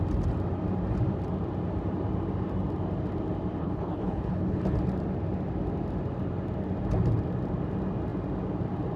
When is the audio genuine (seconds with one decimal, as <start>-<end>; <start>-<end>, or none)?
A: 0.0-3.6; 4.6-9.0